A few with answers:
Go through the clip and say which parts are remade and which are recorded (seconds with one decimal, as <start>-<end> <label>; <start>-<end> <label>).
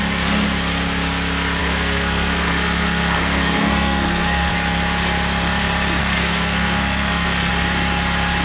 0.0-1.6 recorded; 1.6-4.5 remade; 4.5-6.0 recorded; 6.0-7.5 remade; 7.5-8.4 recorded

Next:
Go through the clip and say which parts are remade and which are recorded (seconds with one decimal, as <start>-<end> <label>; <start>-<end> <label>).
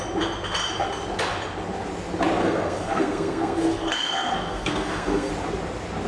0.0-2.4 recorded; 2.4-5.3 remade; 5.3-6.1 recorded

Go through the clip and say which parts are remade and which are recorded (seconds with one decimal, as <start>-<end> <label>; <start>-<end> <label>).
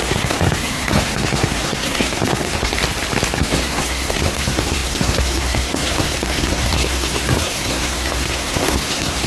0.0-2.7 remade; 2.7-3.4 recorded; 3.4-9.3 remade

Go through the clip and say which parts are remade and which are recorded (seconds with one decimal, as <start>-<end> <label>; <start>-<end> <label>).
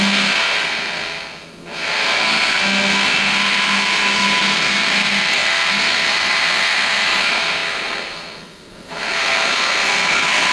0.0-10.5 remade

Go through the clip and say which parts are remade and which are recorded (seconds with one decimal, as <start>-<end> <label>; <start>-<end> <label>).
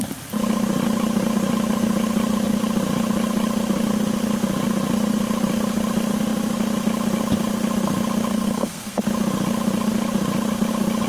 0.0-8.3 recorded; 8.3-9.0 remade; 9.0-11.1 recorded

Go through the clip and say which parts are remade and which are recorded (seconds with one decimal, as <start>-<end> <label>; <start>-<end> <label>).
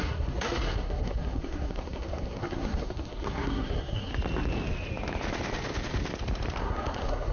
0.0-4.1 remade; 4.1-6.6 recorded; 6.6-7.3 remade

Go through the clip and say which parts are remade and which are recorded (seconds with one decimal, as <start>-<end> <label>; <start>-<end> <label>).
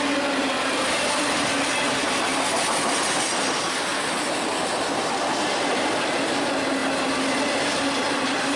0.0-8.6 recorded